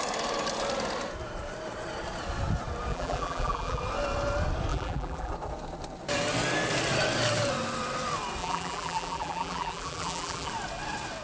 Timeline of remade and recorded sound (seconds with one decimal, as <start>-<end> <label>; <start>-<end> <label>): 0.0-2.9 recorded; 2.9-3.8 remade; 3.8-4.7 recorded; 4.7-5.3 remade; 5.3-8.4 recorded; 8.4-10.5 remade; 10.5-11.2 recorded